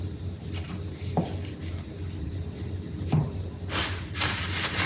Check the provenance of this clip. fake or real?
fake